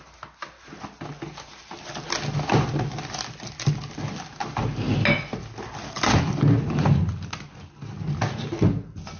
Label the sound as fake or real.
real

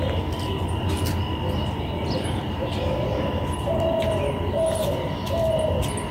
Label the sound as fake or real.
real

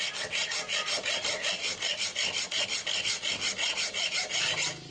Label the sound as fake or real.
real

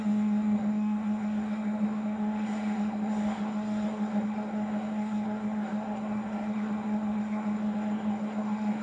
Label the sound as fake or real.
fake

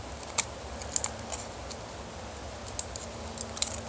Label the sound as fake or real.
real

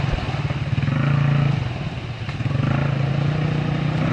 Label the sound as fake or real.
real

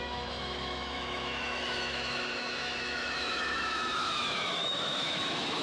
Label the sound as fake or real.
fake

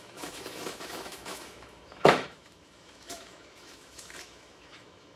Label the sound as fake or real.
fake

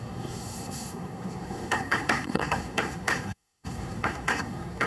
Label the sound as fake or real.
fake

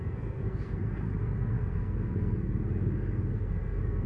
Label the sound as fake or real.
fake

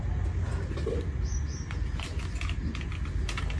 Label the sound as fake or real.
real